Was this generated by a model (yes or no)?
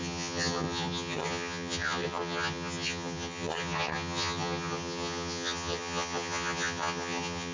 yes